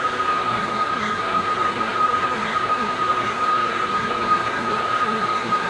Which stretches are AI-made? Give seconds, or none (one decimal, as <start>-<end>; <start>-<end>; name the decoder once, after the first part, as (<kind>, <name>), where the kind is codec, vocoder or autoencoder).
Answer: 0.0-5.7 (codec, SNAC)